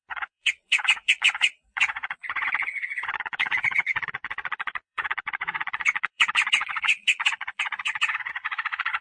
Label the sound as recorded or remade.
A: remade